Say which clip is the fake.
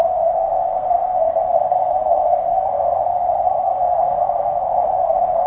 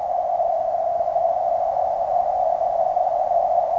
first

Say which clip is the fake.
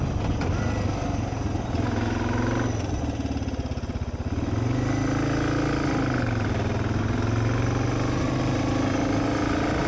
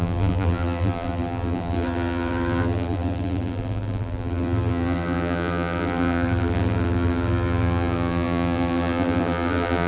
second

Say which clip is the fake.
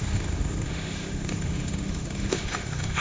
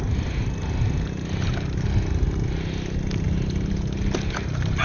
first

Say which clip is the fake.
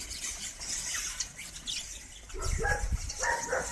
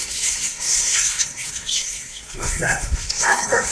second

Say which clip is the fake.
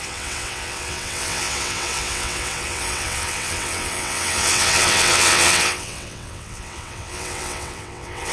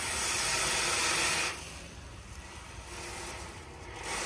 first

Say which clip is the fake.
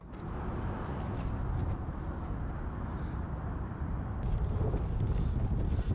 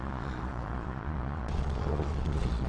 second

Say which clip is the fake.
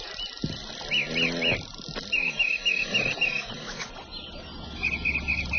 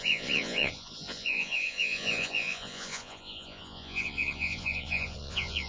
second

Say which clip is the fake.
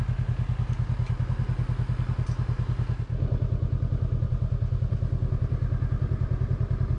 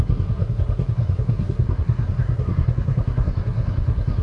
second